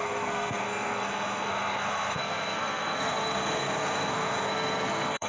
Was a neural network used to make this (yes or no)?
yes